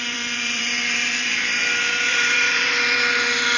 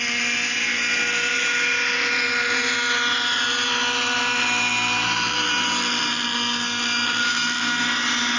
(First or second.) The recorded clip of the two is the second